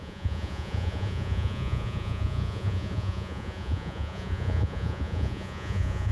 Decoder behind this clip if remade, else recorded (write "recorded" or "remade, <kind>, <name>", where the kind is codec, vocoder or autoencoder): remade, vocoder, Vocos